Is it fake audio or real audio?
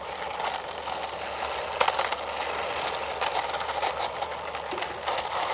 real